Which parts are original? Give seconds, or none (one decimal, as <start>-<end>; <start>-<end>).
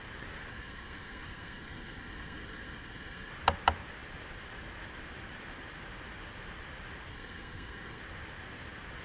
0.0-0.5; 3.3-7.1; 8.0-9.0